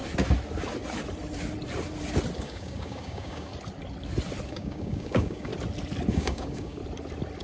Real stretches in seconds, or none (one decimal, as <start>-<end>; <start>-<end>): 0.0-2.4; 3.5-4.5; 5.5-6.1; 6.8-7.4